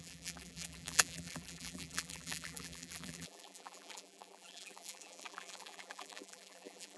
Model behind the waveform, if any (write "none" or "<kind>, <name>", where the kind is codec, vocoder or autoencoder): vocoder, BigVGAN v2